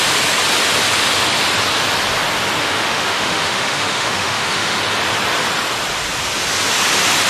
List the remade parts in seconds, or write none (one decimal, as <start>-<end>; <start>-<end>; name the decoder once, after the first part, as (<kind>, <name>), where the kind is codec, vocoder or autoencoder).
2.6-4.8 (autoencoder, DAC-VAE)